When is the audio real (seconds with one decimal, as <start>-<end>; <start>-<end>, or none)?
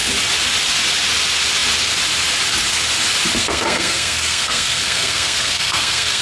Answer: 0.0-3.4